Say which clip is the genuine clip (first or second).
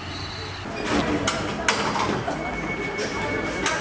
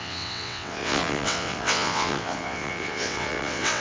first